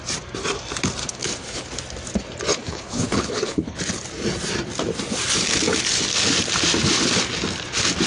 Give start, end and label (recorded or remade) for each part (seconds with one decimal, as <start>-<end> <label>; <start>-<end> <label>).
0.0-1.0 recorded; 1.0-1.7 remade; 1.7-2.5 recorded; 2.5-3.8 remade; 3.8-8.1 recorded